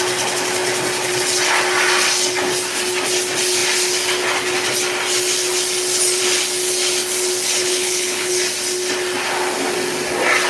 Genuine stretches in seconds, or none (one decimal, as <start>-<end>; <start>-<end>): 0.0-7.6; 8.3-10.5

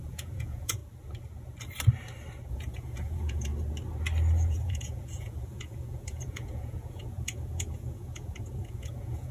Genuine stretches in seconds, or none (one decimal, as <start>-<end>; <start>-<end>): 0.8-2.5; 3.5-4.5

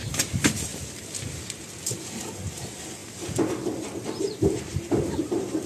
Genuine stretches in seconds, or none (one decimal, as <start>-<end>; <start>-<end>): 0.0-5.7

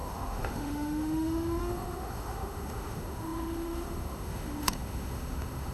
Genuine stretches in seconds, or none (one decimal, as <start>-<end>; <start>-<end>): none

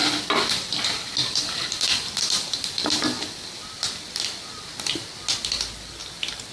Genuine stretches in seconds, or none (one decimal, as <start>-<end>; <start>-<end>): 3.6-6.0

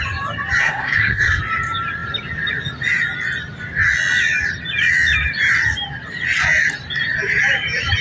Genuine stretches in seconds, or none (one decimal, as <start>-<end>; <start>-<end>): 0.0-0.6; 1.4-8.0